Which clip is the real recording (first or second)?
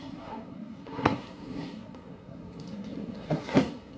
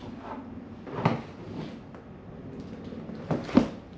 second